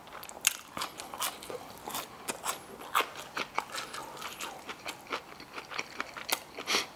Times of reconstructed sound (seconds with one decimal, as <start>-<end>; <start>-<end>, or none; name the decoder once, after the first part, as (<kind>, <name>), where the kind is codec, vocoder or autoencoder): none